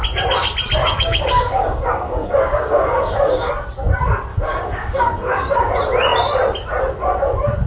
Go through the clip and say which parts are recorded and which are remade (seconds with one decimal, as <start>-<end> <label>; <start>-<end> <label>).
0.0-0.8 recorded; 0.8-3.5 remade; 3.5-4.3 recorded; 4.3-5.6 remade; 5.6-7.7 recorded